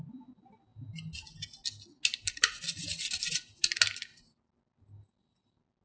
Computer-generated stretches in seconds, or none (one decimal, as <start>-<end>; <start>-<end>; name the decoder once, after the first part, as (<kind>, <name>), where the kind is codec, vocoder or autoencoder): none